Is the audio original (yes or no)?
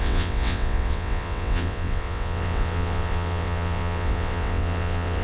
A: no